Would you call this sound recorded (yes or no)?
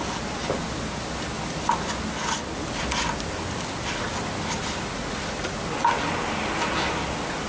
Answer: yes